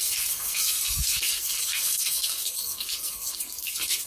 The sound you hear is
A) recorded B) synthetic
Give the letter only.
B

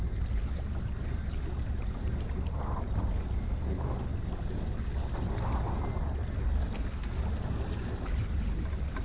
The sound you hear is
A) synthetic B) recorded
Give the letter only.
B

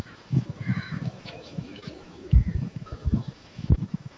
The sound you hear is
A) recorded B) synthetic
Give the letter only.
B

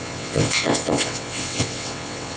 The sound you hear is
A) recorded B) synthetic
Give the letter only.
B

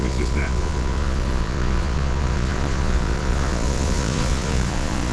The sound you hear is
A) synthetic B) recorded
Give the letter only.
A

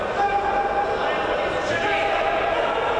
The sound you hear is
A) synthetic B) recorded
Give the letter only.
B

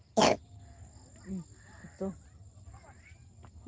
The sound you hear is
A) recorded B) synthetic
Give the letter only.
A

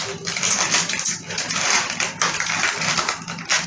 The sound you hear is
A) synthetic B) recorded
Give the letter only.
B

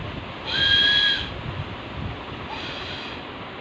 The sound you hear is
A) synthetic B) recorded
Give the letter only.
B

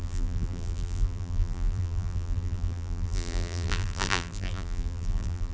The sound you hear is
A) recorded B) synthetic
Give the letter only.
B